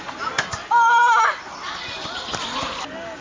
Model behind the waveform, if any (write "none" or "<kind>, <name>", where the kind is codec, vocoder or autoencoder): none